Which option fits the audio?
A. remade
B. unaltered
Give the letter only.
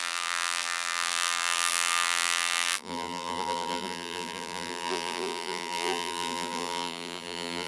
A